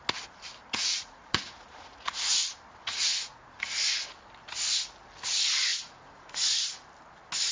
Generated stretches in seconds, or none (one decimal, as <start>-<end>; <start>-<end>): 0.6-2.3; 3.1-3.7; 5.7-6.6